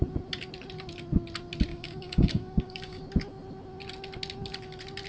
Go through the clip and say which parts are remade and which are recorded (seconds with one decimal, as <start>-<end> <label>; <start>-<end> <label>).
0.0-1.7 recorded; 1.7-3.0 remade; 3.0-5.1 recorded